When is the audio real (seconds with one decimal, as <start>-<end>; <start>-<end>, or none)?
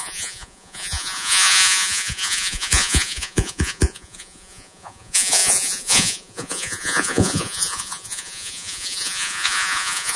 none